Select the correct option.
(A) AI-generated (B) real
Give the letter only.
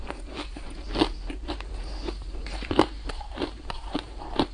A